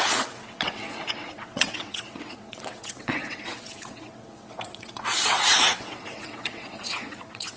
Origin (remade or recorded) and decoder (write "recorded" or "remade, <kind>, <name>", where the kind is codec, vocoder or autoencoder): remade, vocoder, WaveNeXt